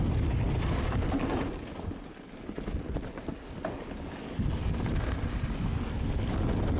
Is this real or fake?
real